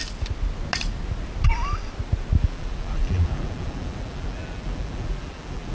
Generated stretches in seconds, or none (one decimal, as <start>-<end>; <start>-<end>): 2.4-5.7